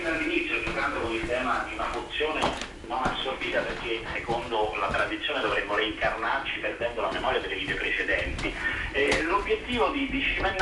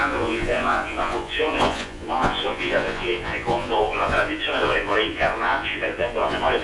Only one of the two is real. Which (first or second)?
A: first